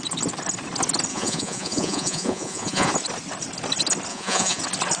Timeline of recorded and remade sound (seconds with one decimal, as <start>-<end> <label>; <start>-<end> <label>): 0.0-1.1 recorded; 1.1-2.9 remade; 2.9-4.1 recorded; 4.1-4.6 remade; 4.6-5.0 recorded